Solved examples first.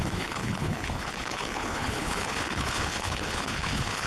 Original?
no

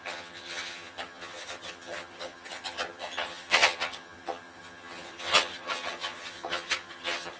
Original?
no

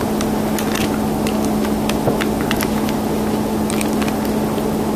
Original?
yes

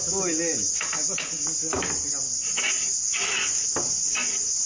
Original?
yes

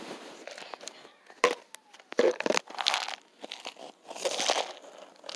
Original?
yes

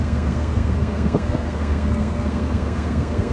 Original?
no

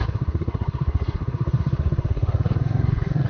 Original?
no